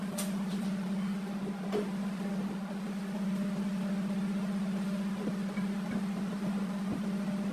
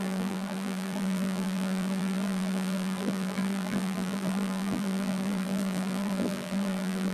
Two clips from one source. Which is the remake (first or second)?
second